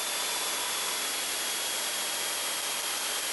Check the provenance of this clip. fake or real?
real